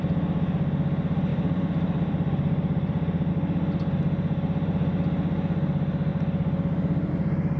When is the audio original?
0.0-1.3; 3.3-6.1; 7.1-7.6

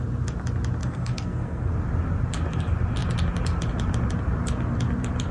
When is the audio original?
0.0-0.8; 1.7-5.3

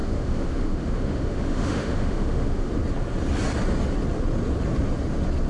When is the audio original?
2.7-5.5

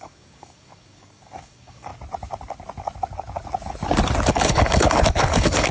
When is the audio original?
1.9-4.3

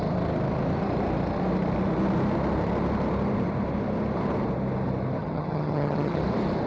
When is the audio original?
0.0-5.2; 6.2-6.7